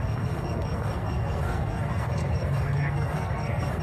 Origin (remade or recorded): remade